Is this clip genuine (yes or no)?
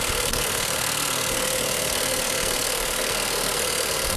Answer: no